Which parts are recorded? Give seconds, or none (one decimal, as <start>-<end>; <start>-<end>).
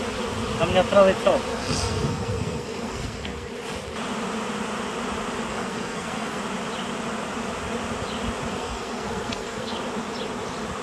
0.0-1.5; 3.5-5.5; 6.4-8.5; 9.8-10.8